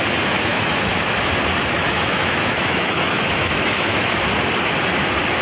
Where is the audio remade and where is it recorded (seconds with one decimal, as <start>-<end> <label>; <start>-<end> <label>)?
0.0-0.5 recorded; 0.5-1.2 remade; 1.2-1.8 recorded; 1.8-4.1 remade; 4.1-5.4 recorded